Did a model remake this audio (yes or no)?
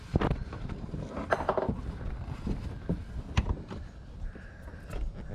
no